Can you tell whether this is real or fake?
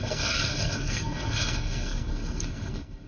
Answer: fake